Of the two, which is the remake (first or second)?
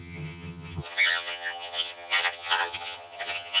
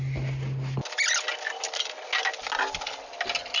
first